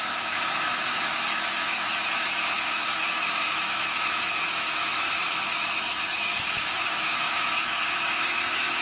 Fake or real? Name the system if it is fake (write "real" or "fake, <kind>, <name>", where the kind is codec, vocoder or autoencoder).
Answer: fake, autoencoder, DAC-VAE